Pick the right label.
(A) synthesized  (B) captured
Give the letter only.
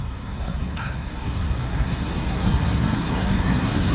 A